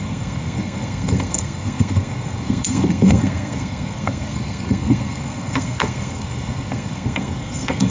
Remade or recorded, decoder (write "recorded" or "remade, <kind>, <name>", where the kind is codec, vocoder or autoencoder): remade, codec, SNAC